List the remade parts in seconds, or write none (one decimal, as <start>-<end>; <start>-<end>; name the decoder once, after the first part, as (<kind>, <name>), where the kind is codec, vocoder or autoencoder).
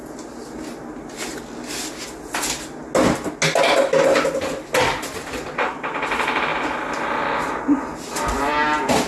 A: none